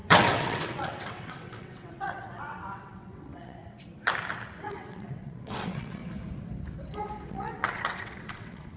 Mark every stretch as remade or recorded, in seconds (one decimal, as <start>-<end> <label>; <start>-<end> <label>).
0.0-3.6 remade; 3.6-4.6 recorded; 4.6-6.0 remade; 6.0-7.3 recorded; 7.3-8.8 remade